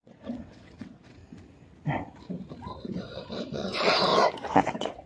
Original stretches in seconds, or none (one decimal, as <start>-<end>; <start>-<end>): 1.2-2.9; 4.1-4.6